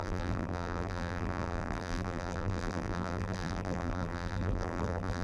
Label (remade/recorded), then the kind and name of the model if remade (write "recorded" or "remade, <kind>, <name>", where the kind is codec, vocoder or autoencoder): remade, vocoder, BigVGAN v2